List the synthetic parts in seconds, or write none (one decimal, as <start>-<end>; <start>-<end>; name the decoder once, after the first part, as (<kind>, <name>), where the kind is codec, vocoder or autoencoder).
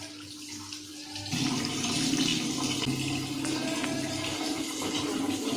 none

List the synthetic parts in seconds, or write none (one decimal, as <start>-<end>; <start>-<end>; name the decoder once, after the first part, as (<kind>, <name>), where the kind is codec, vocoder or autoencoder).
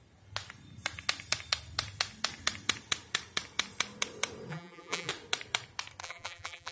4.5-5.1 (vocoder, BigVGAN v2); 6.0-6.7